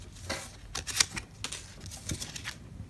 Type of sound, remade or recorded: recorded